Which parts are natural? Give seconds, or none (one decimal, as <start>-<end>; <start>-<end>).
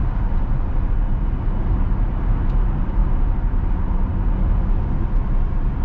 0.0-5.8